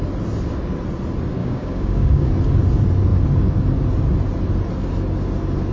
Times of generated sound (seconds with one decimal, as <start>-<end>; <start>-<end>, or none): 1.4-2.3